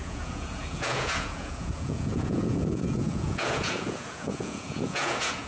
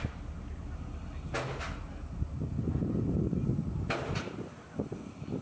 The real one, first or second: second